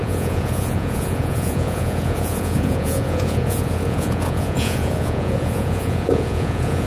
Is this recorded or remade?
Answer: remade